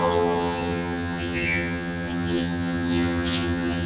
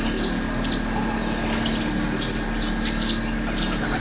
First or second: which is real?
second